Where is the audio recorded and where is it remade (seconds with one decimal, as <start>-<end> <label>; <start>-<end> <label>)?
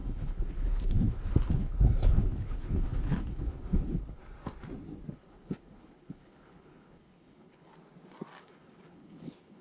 0.0-4.2 remade; 4.2-5.2 recorded; 5.2-7.7 remade; 7.7-8.4 recorded; 8.4-9.6 remade